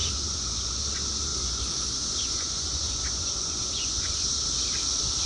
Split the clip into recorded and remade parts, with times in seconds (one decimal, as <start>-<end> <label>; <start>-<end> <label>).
0.0-0.8 remade; 0.8-1.3 recorded; 1.3-4.3 remade; 4.3-5.3 recorded